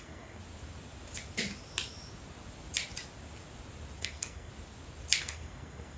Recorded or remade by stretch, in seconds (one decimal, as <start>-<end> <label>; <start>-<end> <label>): 0.0-0.4 remade; 0.4-4.0 recorded; 4.0-4.5 remade; 4.5-5.2 recorded; 5.2-6.0 remade